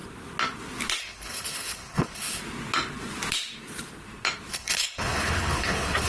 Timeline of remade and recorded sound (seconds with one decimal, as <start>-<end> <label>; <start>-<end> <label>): 0.0-1.0 recorded; 1.0-2.4 remade; 2.4-4.5 recorded; 4.5-6.1 remade